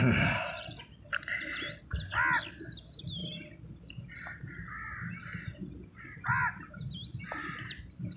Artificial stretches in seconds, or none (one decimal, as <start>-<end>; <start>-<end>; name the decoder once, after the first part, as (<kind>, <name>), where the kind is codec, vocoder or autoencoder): 1.1-1.8 (vocoder, BigVGAN v2); 3.2-4.6; 5.6-6.4